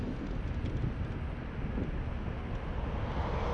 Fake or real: real